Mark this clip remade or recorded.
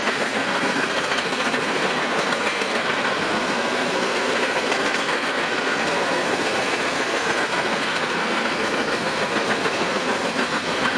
remade